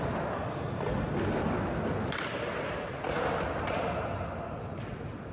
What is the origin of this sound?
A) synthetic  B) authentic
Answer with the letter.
B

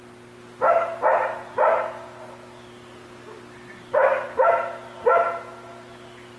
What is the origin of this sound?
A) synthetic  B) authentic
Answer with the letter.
B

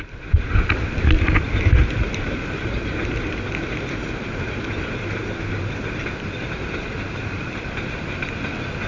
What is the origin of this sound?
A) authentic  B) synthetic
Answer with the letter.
A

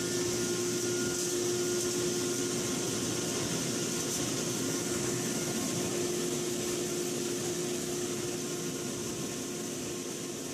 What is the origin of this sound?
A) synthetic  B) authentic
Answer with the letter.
B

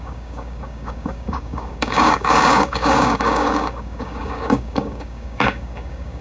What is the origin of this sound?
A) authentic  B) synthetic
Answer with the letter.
B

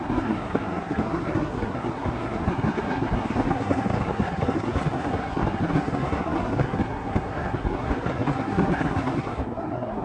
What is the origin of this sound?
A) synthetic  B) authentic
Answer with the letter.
A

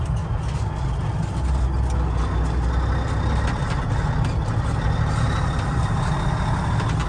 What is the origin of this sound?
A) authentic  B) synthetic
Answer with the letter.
A